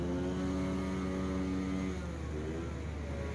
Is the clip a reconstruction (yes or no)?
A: no